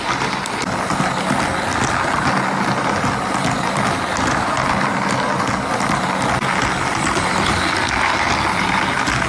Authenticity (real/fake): real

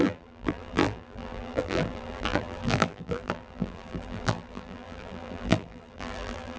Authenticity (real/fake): fake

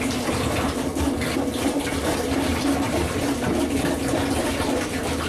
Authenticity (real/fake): real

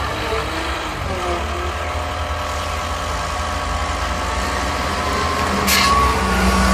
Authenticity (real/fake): real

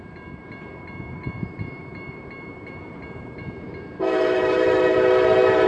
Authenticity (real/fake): fake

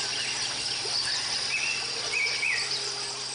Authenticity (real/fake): real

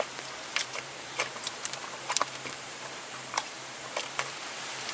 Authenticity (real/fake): fake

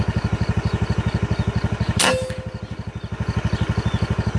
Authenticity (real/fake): real